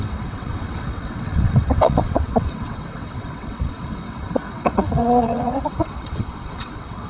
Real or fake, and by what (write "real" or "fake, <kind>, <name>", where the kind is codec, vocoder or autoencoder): fake, vocoder, WaveNeXt